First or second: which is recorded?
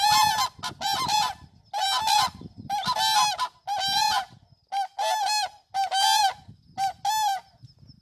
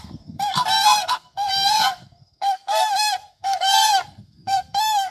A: first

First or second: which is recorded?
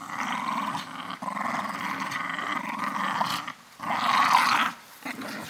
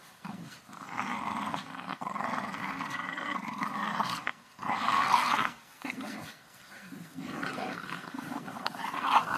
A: first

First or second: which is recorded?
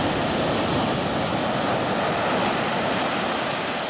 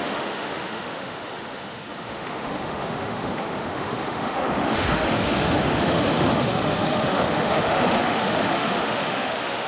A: first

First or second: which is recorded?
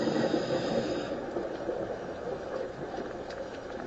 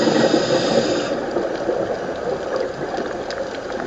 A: second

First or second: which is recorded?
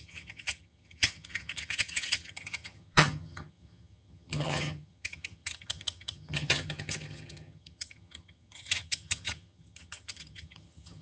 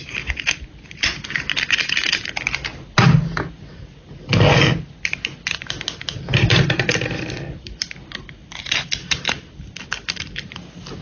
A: second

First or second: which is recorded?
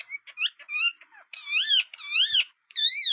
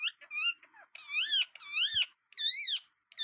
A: second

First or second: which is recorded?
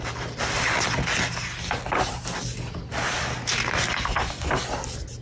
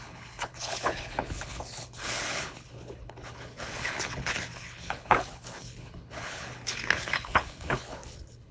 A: first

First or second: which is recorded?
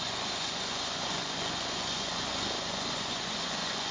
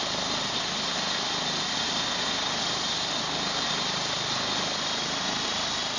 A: second